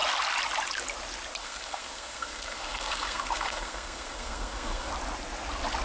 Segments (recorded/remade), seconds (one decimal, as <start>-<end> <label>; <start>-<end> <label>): 0.0-1.4 recorded; 1.4-4.9 remade; 4.9-5.8 recorded